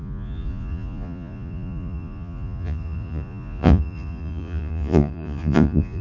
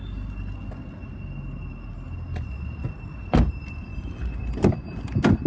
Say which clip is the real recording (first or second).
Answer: second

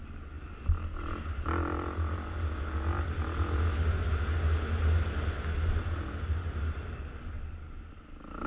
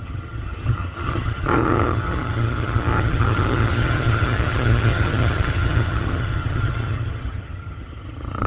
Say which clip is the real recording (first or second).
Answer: first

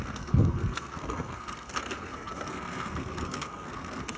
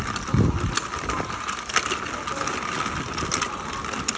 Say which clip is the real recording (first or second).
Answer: second